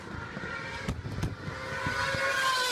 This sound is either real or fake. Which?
real